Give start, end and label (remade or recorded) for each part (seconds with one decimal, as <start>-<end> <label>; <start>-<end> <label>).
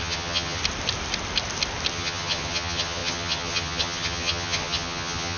0.0-0.6 remade; 0.6-1.9 recorded; 1.9-5.4 remade